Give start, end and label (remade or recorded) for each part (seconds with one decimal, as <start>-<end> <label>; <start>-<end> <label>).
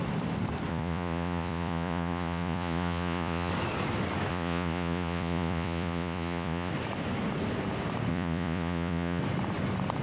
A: 0.0-0.7 recorded; 0.7-3.5 remade; 3.5-4.3 recorded; 4.3-6.7 remade; 6.7-8.1 recorded; 8.1-9.2 remade; 9.2-10.0 recorded